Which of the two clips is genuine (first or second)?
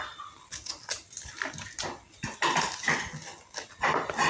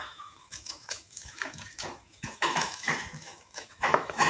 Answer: first